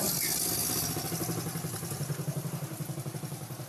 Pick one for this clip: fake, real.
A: real